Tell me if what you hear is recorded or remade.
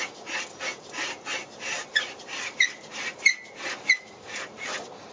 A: recorded